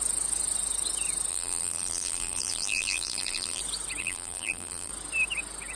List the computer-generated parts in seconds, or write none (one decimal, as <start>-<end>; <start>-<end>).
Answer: 1.3-3.6; 4.0-4.9